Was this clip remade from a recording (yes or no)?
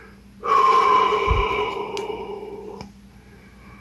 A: no